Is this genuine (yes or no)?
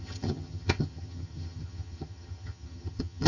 no